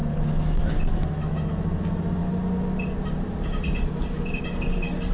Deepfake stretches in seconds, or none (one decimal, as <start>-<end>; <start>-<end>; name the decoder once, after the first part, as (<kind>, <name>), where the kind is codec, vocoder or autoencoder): 0.0-0.6 (autoencoder, DAC-VAE); 1.0-1.8